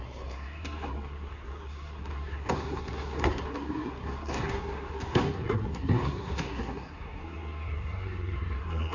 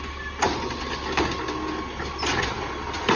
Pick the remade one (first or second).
first